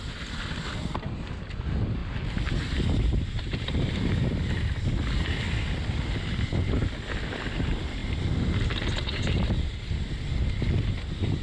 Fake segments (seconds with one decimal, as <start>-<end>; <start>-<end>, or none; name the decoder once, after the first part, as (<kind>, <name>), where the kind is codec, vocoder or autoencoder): none